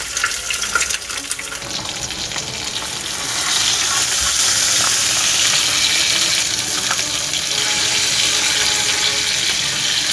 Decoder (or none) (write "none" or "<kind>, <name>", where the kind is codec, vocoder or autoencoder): none